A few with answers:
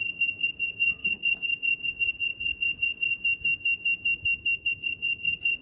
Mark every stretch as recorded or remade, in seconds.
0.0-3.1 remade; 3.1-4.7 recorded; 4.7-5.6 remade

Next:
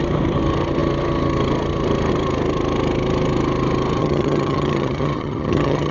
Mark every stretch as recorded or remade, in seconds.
0.0-4.0 recorded; 4.0-5.9 remade

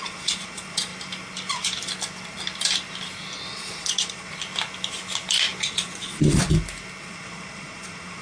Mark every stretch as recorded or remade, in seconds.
0.0-0.9 remade; 0.9-3.5 recorded; 3.5-4.3 remade; 4.3-5.6 recorded; 5.6-6.5 remade; 6.5-7.0 recorded; 7.0-8.2 remade

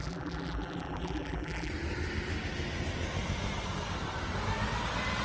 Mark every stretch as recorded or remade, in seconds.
0.0-1.7 remade; 1.7-5.2 recorded